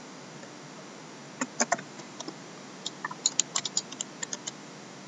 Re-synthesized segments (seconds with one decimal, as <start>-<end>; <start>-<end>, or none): none

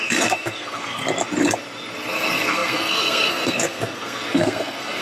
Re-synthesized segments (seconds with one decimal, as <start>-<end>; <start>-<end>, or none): 0.0-1.0; 2.1-5.0

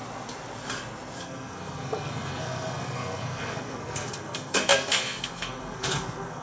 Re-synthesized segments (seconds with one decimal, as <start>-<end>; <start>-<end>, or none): 1.2-6.4